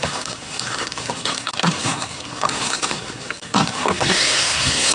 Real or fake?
fake